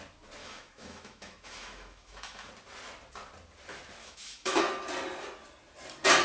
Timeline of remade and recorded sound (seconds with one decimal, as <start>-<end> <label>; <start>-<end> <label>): 0.0-0.4 recorded; 0.4-2.5 remade; 2.5-4.0 recorded; 4.0-4.6 remade; 4.6-6.2 recorded